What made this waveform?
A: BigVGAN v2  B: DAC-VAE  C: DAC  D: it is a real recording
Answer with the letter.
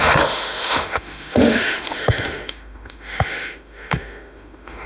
B